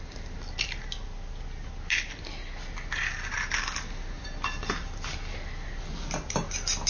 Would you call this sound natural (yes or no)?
yes